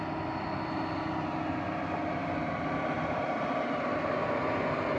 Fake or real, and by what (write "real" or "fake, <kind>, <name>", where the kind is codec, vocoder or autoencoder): real